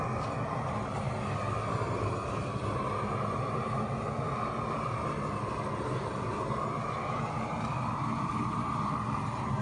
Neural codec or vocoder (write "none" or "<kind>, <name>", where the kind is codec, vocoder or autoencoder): none